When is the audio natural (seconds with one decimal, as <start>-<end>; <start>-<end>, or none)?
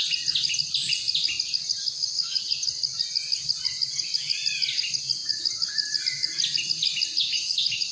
0.0-1.8; 2.4-7.2